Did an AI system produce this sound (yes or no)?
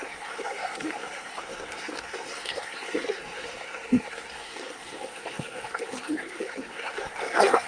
yes